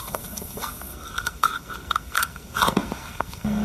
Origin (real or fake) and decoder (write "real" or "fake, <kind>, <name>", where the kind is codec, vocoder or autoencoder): fake, codec, SNAC